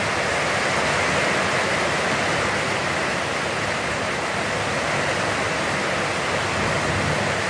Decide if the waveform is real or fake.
real